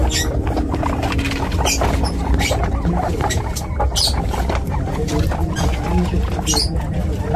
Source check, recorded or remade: recorded